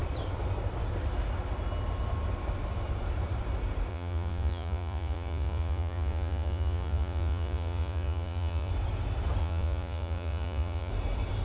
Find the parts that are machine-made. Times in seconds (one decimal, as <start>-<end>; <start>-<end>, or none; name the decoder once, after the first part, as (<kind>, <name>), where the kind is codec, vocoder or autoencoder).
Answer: 3.9-8.7 (vocoder, Vocos); 9.4-10.9